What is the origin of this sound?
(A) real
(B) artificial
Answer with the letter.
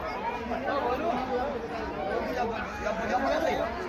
A